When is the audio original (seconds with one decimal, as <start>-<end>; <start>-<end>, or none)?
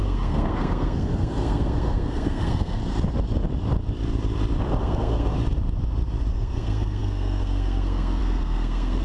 2.8-4.8; 5.3-6.3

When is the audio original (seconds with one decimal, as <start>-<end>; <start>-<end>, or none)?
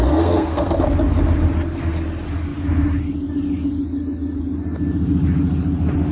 0.8-6.1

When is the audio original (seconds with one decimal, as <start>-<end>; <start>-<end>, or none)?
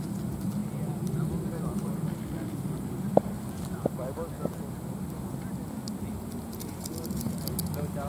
0.0-8.1